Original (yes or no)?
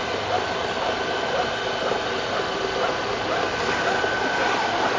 yes